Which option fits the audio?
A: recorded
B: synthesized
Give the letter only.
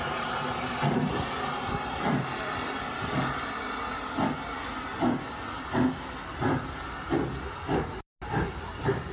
A